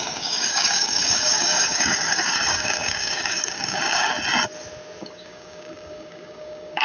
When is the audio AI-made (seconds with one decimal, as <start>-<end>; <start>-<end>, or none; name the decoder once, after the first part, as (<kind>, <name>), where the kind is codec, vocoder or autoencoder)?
0.0-4.1 (codec, DAC); 5.0-6.8